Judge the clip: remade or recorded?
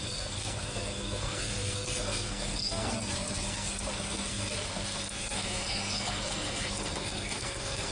remade